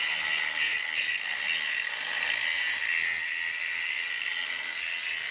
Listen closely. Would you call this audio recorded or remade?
recorded